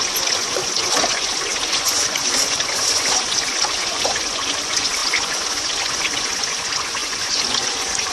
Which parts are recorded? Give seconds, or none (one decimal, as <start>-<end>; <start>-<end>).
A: none